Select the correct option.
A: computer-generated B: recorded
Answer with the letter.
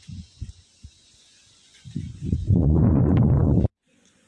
A